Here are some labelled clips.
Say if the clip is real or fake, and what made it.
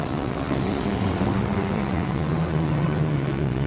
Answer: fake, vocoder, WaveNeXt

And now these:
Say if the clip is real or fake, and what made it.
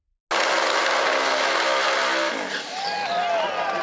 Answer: real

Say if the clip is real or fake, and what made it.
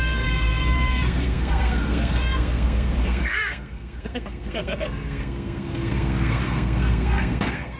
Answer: fake, codec, SNAC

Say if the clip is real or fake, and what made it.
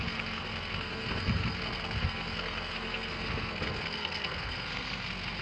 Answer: fake, codec, SNAC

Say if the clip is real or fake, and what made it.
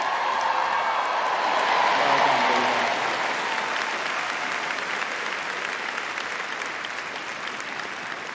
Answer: real